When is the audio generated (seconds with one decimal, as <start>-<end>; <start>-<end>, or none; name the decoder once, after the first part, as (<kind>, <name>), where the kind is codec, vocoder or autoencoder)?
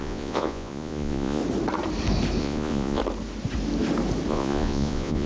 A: 0.0-1.4 (vocoder, Vocos); 2.4-3.0; 4.3-5.3